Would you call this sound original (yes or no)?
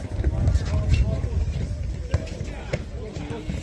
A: yes